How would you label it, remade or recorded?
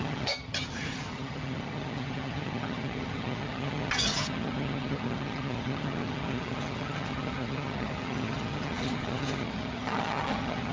remade